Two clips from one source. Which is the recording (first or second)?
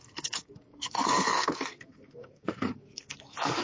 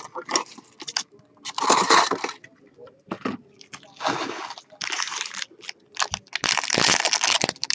second